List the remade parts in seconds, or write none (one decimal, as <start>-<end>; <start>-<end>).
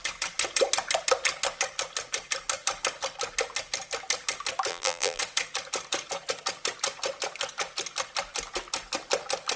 4.7-5.2